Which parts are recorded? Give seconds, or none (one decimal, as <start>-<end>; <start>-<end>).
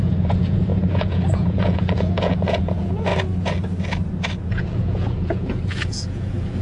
3.1-4.4